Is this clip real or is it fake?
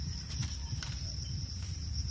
fake